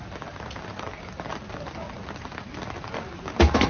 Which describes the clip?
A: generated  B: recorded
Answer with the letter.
B